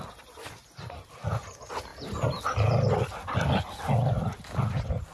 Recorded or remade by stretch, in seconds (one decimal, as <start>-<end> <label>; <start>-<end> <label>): 0.0-5.1 recorded